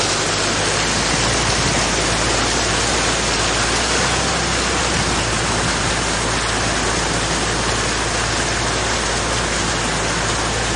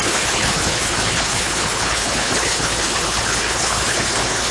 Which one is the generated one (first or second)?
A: second